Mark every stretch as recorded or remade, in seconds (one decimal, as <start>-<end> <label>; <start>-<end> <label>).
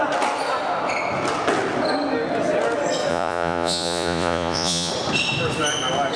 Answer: 0.0-3.1 recorded; 3.1-4.9 remade; 4.9-6.2 recorded